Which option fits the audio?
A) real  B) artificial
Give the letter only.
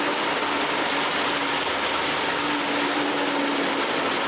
A